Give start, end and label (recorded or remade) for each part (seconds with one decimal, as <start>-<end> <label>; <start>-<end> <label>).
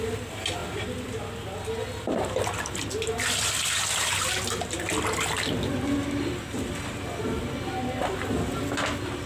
0.0-9.3 recorded